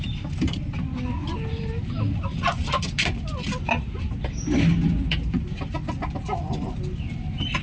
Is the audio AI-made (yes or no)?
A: no